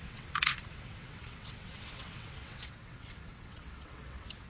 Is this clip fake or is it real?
fake